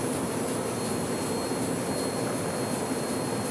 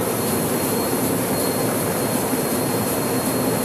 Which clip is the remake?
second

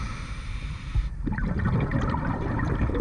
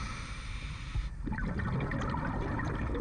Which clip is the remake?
first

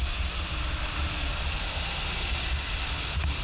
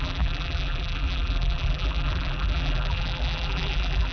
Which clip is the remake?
second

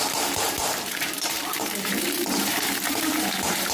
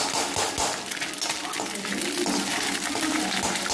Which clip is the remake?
first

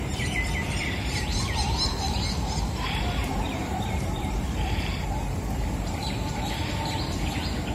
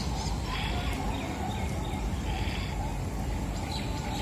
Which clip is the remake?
first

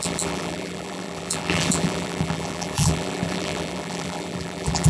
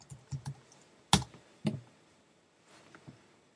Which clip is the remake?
first